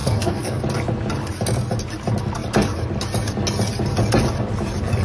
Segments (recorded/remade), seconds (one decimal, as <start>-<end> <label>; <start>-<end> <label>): 0.0-0.6 remade; 0.6-5.0 recorded